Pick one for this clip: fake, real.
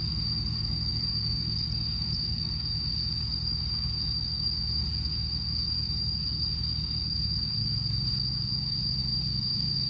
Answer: fake